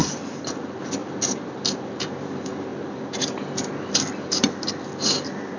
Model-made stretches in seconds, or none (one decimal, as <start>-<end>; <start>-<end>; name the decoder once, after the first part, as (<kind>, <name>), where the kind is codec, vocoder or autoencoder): none